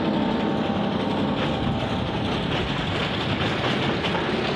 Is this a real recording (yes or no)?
yes